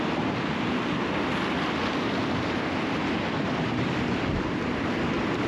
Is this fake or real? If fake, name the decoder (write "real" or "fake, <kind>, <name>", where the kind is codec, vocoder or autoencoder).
real